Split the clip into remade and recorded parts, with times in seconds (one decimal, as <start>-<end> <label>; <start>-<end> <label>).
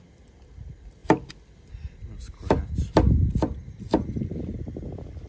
0.0-5.3 recorded